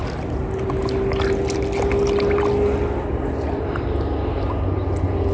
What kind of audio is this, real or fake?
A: real